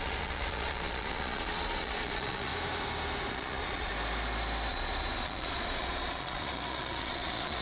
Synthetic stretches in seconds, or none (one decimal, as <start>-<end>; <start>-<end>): 0.0-2.5; 3.3-3.9; 4.7-7.6